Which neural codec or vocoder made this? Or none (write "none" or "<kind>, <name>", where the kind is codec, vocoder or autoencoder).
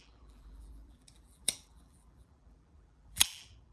vocoder, BigVGAN v2